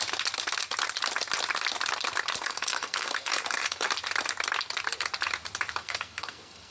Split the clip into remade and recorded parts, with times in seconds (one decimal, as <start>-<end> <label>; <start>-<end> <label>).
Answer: 0.0-2.4 recorded; 2.4-3.9 remade; 3.9-5.8 recorded; 5.8-6.7 remade